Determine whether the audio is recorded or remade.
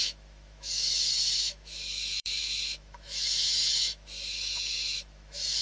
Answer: remade